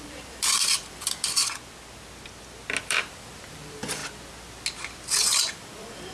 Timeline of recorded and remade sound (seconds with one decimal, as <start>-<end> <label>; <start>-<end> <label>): 0.0-1.4 remade; 1.4-2.8 recorded; 2.8-4.0 remade; 4.0-5.5 recorded; 5.5-6.1 remade